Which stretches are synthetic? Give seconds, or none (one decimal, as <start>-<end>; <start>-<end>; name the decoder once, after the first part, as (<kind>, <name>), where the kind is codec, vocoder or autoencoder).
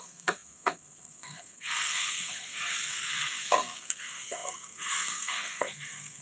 0.0-6.2 (codec, SNAC)